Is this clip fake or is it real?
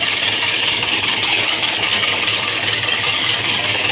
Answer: fake